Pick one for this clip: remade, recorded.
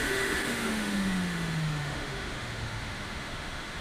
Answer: remade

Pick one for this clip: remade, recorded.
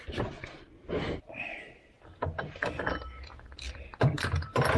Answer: recorded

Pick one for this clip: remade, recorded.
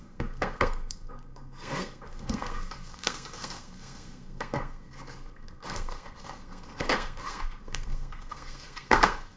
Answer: remade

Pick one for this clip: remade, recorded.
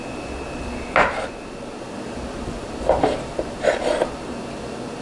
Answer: recorded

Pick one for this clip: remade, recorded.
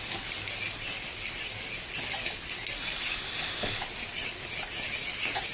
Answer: recorded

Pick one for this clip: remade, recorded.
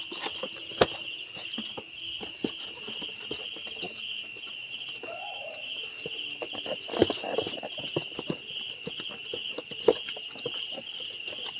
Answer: recorded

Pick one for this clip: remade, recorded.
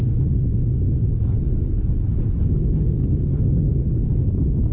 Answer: recorded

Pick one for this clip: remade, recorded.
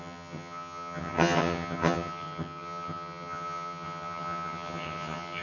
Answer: remade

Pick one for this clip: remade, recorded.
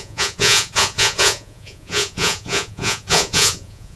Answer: remade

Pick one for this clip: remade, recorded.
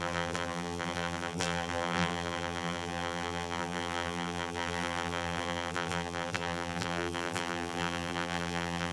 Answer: remade